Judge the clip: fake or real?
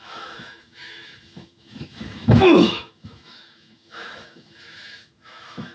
fake